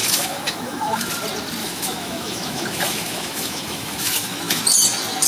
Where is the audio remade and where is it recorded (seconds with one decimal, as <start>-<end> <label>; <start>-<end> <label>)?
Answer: 0.0-1.1 remade; 1.1-1.6 recorded; 1.6-4.6 remade; 4.6-5.3 recorded